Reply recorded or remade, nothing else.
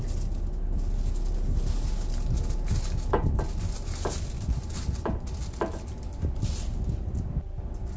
recorded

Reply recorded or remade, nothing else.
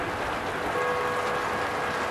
recorded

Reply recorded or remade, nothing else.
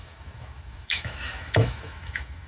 remade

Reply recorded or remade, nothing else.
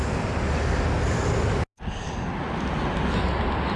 recorded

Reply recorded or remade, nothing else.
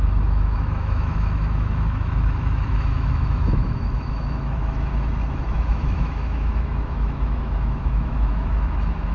remade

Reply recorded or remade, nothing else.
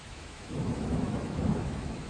remade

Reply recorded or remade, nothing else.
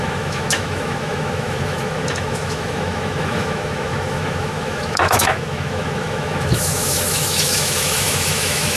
remade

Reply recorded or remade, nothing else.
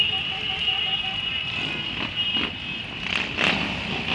recorded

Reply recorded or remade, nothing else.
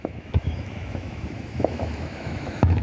remade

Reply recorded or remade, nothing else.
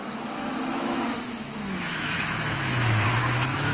remade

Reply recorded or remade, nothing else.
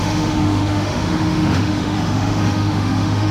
remade